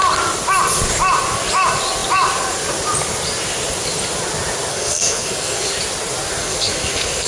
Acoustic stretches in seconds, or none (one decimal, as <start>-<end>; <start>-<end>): 0.0-4.7; 5.7-6.4